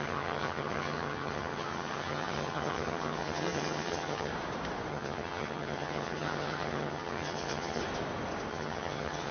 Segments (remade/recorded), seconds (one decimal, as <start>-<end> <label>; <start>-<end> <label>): 0.0-4.3 remade; 4.3-4.9 recorded; 4.9-7.8 remade; 7.8-8.5 recorded; 8.5-9.3 remade

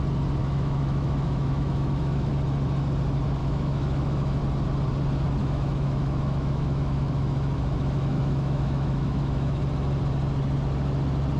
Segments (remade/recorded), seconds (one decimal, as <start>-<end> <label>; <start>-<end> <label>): 0.0-0.4 recorded; 0.4-2.3 remade; 2.3-3.4 recorded; 3.4-4.4 remade; 4.4-5.4 recorded; 5.4-9.6 remade; 9.6-11.4 recorded